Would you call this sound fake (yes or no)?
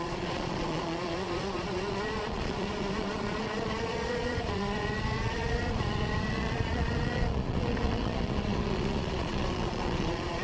yes